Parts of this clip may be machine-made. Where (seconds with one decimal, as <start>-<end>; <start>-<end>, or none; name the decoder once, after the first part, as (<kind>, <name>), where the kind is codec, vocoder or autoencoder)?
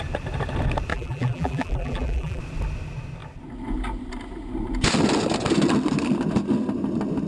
0.9-2.4 (vocoder, BigVGAN v2)